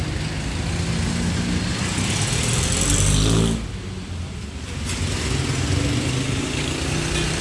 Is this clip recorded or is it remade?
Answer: recorded